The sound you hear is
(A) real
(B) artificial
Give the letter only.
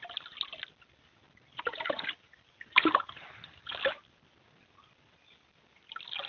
A